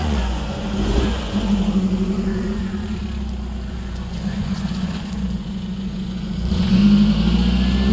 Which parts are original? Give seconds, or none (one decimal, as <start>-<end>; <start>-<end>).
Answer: 3.0-3.7; 6.8-7.9